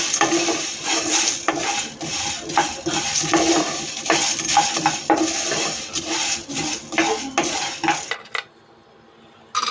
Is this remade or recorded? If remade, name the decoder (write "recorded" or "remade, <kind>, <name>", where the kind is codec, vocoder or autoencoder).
recorded